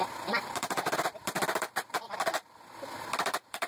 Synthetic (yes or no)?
yes